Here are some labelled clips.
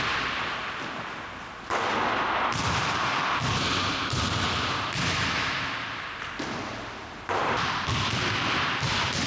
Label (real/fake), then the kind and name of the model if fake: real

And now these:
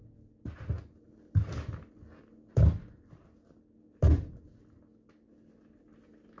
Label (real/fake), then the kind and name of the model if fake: real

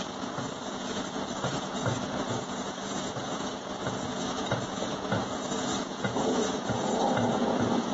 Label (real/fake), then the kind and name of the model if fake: fake, vocoder, Vocos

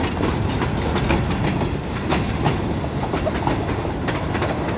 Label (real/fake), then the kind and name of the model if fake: real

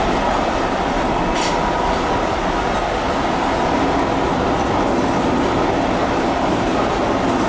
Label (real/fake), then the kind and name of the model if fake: real